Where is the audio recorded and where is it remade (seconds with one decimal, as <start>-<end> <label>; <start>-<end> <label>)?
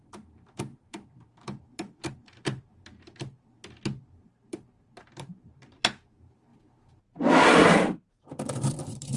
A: 0.0-3.6 remade; 3.6-4.2 recorded; 4.2-6.5 remade; 6.5-7.3 recorded; 7.3-9.2 remade